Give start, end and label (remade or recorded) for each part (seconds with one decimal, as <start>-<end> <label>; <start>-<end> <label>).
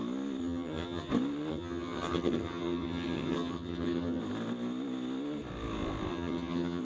0.0-0.4 recorded; 0.4-1.1 remade; 1.1-1.5 recorded; 1.5-4.2 remade; 4.2-6.1 recorded; 6.1-6.8 remade